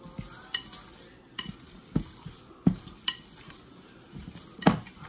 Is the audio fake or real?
real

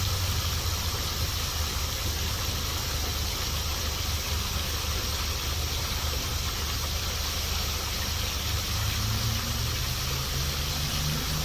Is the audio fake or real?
real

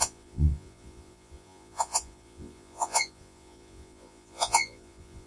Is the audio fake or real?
fake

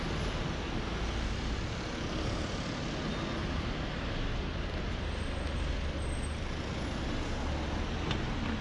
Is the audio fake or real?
real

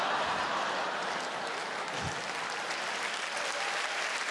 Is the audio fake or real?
real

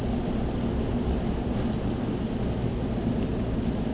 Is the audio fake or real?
real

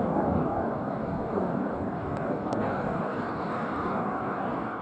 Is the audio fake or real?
fake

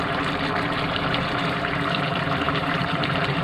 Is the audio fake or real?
fake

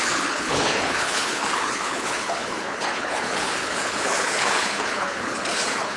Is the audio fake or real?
fake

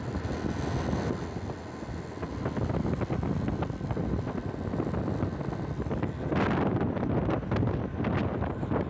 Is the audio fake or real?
real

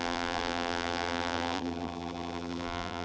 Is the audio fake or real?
fake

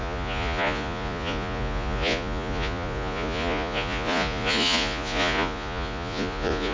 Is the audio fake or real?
fake